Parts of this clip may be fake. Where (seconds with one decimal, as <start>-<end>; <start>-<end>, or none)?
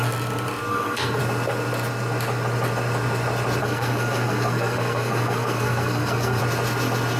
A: 0.7-1.2; 3.6-6.4